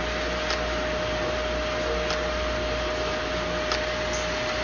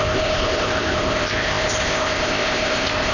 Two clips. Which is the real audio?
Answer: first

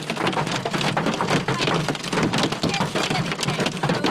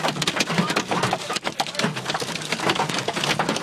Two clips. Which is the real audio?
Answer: first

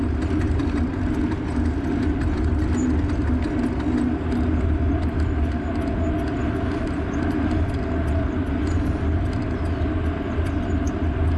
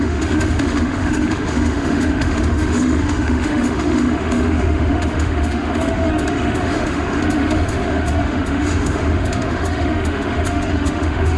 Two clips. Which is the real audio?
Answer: first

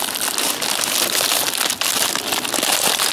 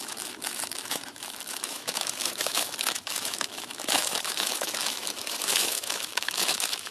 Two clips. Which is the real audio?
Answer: first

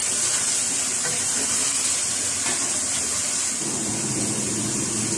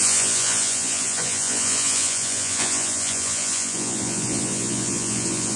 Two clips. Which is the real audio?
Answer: first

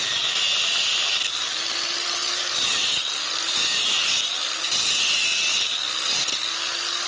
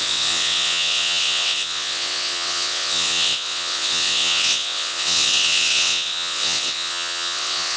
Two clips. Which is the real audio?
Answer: first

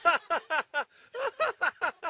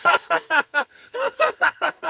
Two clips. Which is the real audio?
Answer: first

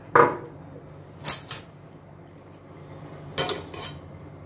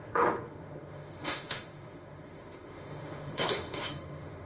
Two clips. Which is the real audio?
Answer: first